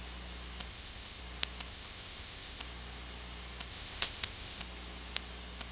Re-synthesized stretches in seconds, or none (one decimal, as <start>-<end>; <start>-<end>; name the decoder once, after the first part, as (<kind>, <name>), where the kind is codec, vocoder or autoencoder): 0.7-1.2 (codec, ZipCodec); 1.7-2.6; 3.7-4.6